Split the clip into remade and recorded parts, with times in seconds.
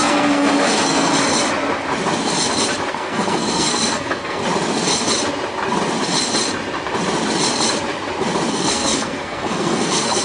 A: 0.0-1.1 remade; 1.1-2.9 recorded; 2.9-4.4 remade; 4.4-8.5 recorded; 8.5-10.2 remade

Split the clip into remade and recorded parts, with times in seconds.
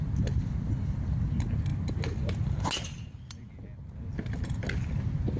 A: 0.0-5.4 recorded